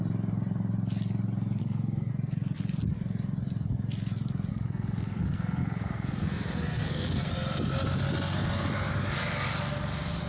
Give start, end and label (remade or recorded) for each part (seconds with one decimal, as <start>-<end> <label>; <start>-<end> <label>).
0.0-1.6 recorded; 1.6-2.1 remade; 2.1-4.5 recorded; 4.5-7.3 remade; 7.3-10.3 recorded

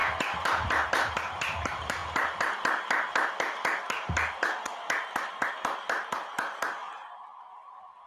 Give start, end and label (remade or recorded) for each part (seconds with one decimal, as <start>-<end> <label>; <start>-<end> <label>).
0.0-2.0 remade; 2.0-5.5 recorded; 5.5-8.1 remade

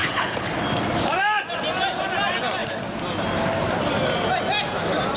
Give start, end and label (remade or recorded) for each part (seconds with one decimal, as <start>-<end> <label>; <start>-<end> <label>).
0.0-0.5 remade; 0.5-5.2 recorded

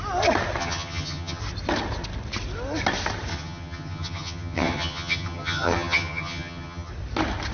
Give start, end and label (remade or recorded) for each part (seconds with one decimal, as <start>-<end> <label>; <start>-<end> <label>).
0.0-0.6 recorded; 0.6-1.4 remade; 1.4-3.3 recorded; 3.3-6.9 remade; 6.9-7.5 recorded

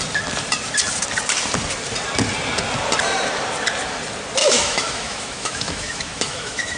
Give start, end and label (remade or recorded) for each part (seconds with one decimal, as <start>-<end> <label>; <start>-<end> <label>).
0.0-4.4 recorded; 4.4-6.8 remade

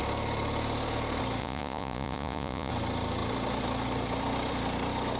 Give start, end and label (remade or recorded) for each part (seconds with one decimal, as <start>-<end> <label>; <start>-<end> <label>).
0.0-1.4 recorded; 1.4-2.7 remade; 2.7-5.2 recorded

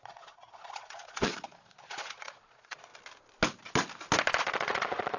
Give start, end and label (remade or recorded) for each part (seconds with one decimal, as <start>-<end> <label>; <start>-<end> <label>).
0.0-2.9 remade; 2.9-4.4 recorded; 4.4-5.2 remade

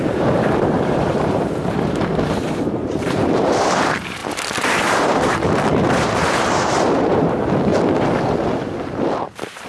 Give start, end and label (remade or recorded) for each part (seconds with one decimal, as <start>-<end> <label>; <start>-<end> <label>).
0.0-4.2 remade; 4.2-4.8 recorded; 4.8-7.7 remade; 7.7-9.7 recorded